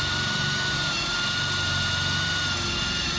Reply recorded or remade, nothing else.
recorded